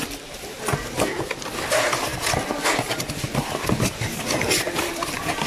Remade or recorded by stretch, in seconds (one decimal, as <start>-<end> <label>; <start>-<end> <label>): 0.0-5.5 remade